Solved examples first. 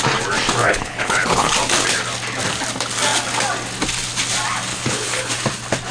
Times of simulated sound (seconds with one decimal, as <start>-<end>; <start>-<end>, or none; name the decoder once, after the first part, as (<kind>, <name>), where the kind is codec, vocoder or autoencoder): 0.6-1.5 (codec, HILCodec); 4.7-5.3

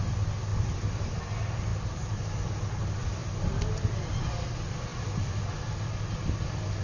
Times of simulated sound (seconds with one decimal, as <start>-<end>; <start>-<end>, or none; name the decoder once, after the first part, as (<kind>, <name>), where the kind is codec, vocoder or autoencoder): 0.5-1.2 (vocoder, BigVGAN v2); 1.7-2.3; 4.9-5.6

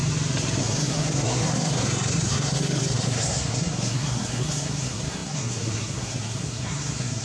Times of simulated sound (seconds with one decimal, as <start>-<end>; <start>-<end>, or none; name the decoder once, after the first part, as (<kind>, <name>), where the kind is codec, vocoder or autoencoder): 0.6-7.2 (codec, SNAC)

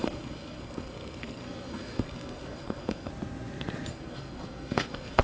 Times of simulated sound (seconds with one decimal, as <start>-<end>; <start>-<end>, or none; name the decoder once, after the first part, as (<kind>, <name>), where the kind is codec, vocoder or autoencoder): 0.0-3.1 (codec, SNAC); 3.9-5.2

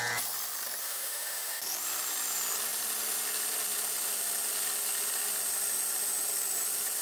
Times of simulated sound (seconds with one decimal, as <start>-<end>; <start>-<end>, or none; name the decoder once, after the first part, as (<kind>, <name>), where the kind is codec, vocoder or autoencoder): 0.8-1.6 (autoencoder, DAC-VAE)